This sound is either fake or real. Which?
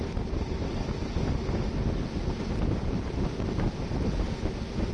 real